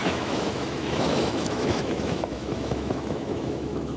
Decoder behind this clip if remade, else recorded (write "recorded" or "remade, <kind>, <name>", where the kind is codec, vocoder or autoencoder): remade, autoencoder, DAC-VAE